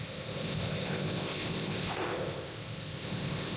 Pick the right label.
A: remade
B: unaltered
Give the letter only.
A